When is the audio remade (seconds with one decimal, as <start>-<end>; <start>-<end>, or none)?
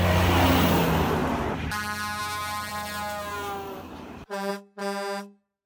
2.7-4.5